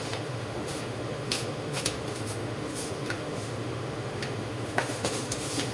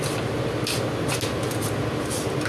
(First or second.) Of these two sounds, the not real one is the first